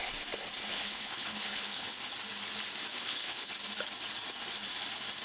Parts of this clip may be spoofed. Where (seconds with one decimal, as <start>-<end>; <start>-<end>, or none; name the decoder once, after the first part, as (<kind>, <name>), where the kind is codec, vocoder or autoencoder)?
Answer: 0.7-2.0 (codec, HILCodec); 2.9-3.5